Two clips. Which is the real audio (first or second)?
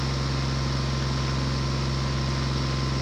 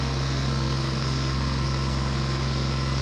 first